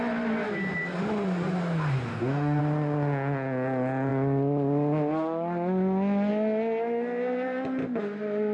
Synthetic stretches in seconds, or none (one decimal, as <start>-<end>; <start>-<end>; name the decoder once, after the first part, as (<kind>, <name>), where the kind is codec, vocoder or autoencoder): 2.1-2.6 (codec, DAC)